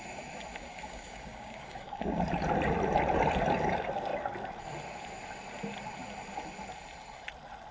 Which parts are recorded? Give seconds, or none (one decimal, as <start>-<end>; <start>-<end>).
0.0-0.7; 2.2-7.7